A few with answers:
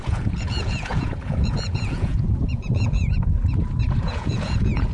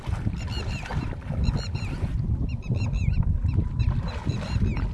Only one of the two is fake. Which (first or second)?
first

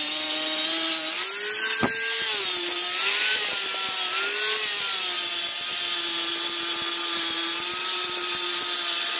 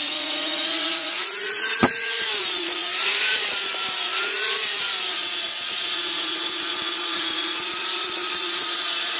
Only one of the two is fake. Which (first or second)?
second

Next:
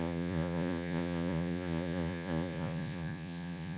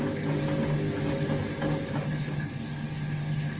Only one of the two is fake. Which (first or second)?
first